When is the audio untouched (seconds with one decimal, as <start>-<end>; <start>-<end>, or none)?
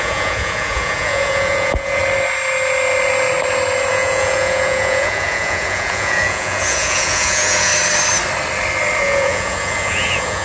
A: 2.0-3.9; 7.7-9.0